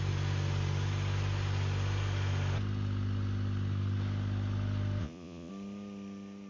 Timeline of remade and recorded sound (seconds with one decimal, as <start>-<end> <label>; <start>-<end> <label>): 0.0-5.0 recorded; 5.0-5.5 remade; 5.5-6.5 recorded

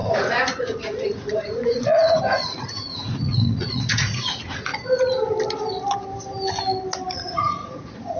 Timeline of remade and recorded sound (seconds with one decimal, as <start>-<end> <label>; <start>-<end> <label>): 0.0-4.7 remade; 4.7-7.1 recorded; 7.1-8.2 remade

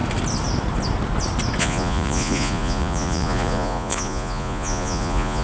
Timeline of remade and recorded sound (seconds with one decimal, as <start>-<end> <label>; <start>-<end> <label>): 0.0-1.6 recorded; 1.6-5.4 remade

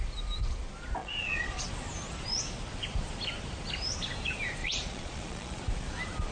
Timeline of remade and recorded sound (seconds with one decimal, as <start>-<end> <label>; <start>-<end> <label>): 0.0-1.0 recorded; 1.0-1.7 remade; 1.7-4.6 recorded; 4.6-5.6 remade; 5.6-6.3 recorded

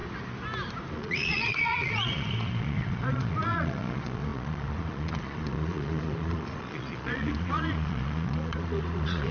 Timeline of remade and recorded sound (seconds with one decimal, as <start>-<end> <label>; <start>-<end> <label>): 0.0-0.9 recorded; 0.9-9.3 remade

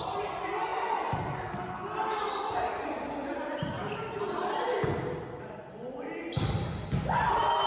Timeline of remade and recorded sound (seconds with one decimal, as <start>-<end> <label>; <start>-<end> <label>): 0.0-7.7 recorded

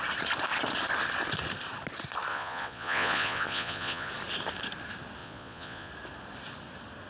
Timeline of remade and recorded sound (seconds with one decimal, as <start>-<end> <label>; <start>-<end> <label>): 0.0-2.3 recorded; 2.3-4.1 remade; 4.1-5.2 recorded; 5.2-5.9 remade; 5.9-7.1 recorded